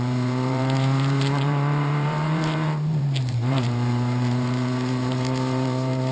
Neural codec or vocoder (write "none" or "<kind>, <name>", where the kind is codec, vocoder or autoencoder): vocoder, BigVGAN v2